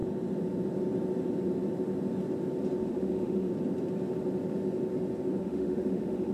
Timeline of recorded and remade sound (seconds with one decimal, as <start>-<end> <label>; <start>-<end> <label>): 0.0-2.8 recorded; 2.8-3.5 remade; 3.5-5.4 recorded; 5.4-6.3 remade